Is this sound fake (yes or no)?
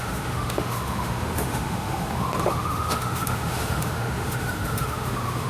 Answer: yes